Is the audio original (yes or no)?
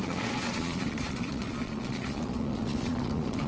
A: no